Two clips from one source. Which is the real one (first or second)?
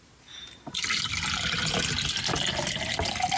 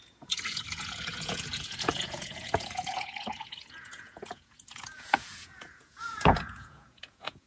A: first